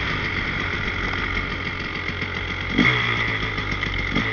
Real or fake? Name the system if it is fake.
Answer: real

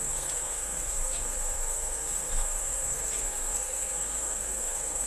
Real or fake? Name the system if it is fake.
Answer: fake, codec, SNAC